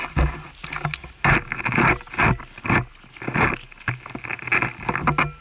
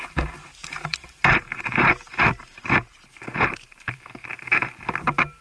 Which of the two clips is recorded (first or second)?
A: first